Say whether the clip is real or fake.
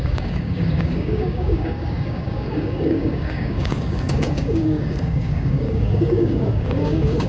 fake